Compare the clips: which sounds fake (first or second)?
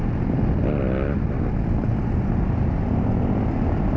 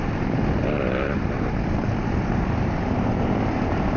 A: second